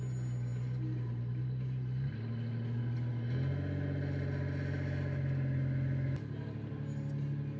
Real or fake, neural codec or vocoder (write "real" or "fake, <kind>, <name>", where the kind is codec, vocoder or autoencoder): real